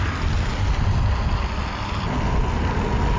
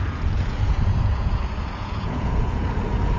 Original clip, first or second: first